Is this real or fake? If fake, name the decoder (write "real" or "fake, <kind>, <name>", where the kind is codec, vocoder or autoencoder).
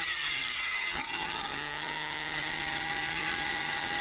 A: fake, vocoder, HiFi-GAN